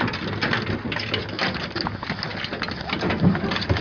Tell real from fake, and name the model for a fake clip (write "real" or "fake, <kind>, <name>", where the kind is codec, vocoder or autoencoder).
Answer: real